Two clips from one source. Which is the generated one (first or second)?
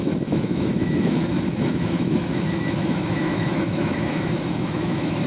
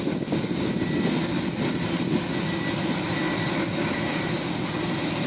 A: first